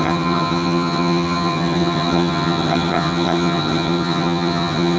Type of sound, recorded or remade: remade